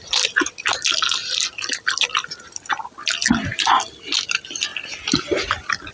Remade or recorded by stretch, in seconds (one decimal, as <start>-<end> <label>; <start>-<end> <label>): 0.0-5.9 recorded